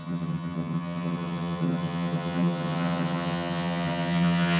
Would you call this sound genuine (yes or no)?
no